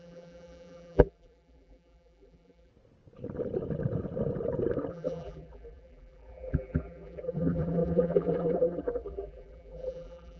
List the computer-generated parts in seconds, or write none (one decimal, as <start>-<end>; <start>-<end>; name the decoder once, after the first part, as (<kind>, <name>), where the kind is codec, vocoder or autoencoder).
0.0-2.7 (vocoder, BigVGAN v2); 4.9-10.4